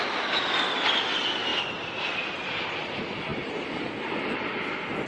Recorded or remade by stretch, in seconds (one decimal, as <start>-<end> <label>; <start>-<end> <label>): 0.0-5.1 recorded